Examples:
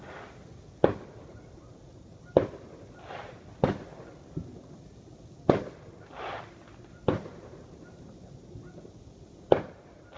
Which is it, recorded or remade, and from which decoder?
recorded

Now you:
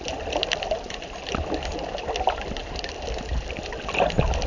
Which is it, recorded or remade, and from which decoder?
recorded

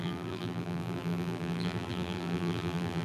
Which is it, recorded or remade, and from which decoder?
remade, vocoder, BigVGAN v2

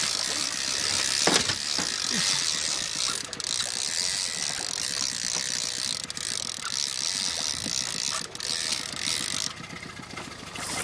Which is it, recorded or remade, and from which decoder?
recorded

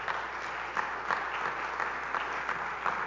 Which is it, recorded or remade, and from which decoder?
recorded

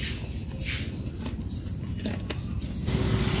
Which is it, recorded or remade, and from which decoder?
recorded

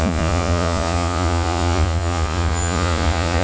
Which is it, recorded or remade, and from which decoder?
remade, vocoder, Vocos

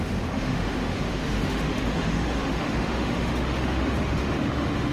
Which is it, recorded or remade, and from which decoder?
remade, autoencoder, DAC-VAE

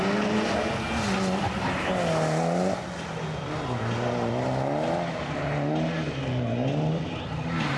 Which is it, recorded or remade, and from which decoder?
recorded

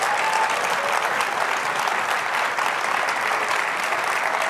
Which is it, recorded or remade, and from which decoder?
remade, vocoder, BigVGAN v2